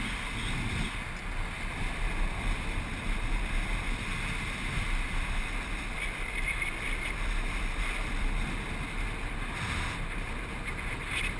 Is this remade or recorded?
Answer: recorded